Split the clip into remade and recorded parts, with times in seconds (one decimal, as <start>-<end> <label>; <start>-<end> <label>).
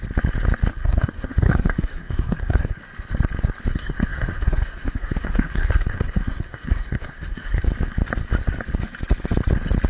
0.0-0.8 recorded; 0.8-2.8 remade; 2.8-3.7 recorded; 3.7-7.7 remade; 7.7-9.9 recorded